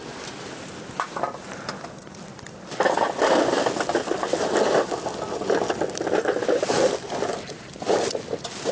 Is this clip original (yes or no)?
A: yes